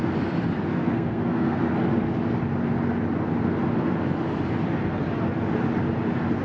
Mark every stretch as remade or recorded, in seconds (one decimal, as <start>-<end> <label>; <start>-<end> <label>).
0.0-0.7 recorded; 0.7-1.7 remade; 1.7-6.4 recorded